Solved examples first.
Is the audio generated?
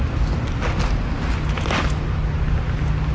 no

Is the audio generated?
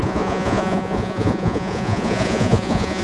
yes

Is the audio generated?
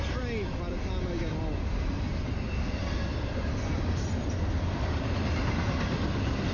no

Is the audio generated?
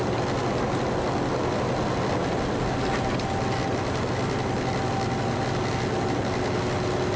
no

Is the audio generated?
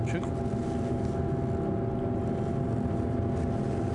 no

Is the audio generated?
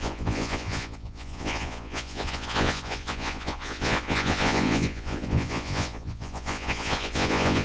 yes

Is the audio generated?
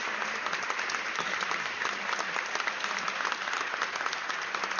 no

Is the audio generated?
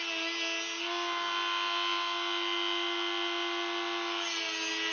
no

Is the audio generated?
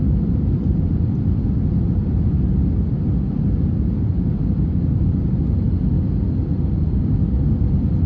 no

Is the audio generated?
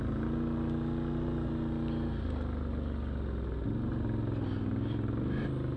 no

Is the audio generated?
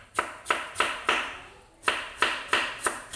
no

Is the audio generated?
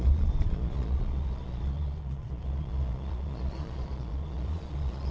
yes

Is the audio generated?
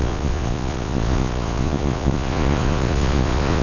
yes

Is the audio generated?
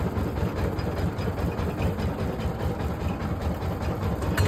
no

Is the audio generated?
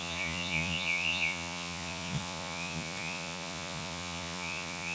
yes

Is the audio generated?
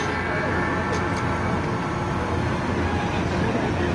no